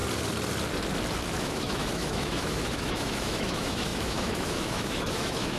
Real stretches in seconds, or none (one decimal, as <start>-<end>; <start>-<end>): 0.0-1.4